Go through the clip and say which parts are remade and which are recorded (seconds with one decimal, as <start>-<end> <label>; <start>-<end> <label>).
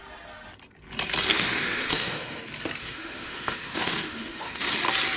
0.0-1.3 recorded; 1.3-2.4 remade; 2.4-2.8 recorded; 2.8-4.7 remade; 4.7-5.2 recorded